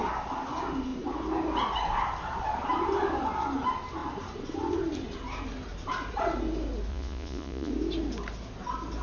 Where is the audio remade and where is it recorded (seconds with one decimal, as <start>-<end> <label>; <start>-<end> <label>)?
0.0-6.9 recorded; 6.9-7.7 remade; 7.7-9.0 recorded